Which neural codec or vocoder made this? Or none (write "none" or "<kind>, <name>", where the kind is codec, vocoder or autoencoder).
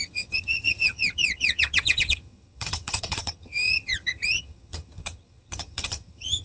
vocoder, HiFi-GAN